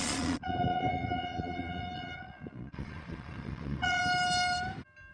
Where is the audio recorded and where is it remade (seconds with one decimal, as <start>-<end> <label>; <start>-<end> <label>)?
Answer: 0.0-4.0 remade; 4.0-5.1 recorded